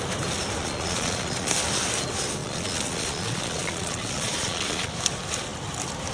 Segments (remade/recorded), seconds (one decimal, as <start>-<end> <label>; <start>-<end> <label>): 0.0-0.6 recorded; 0.6-1.5 remade; 1.5-2.4 recorded; 2.4-4.9 remade; 4.9-6.1 recorded